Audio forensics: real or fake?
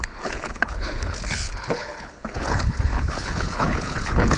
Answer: fake